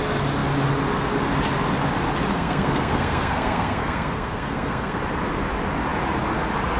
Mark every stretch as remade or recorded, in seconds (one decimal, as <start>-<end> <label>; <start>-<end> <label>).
0.0-2.3 recorded; 2.3-5.0 remade; 5.0-6.8 recorded